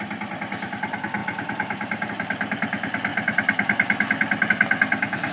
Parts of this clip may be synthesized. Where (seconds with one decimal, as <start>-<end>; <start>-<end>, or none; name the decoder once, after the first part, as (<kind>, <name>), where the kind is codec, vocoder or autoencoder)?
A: none